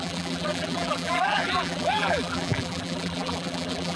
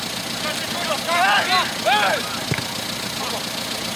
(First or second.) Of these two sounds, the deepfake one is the first